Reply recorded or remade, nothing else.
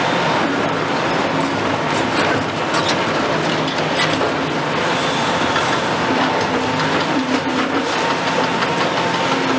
recorded